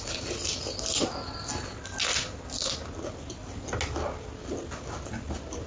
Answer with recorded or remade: recorded